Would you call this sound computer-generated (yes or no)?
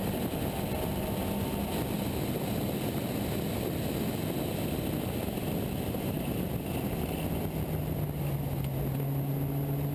no